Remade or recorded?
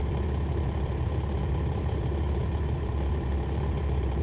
remade